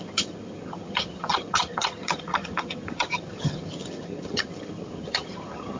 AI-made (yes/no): yes